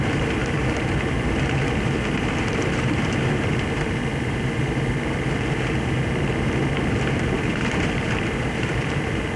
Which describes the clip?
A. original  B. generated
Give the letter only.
B